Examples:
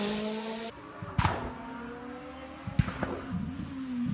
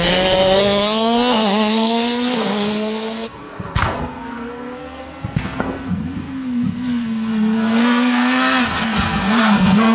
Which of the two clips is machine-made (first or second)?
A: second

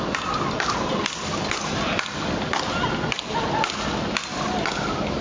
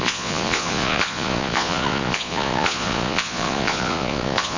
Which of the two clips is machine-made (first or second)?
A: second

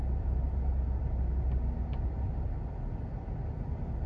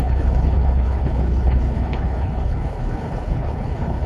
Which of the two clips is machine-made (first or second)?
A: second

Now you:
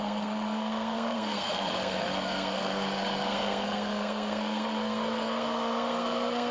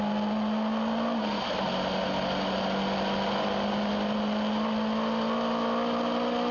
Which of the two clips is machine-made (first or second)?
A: first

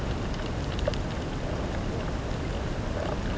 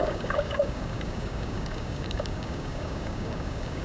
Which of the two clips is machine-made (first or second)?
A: second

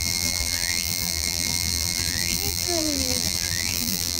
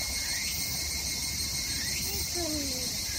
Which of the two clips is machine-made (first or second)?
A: first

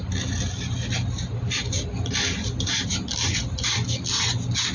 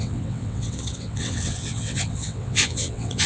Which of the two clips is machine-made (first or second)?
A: second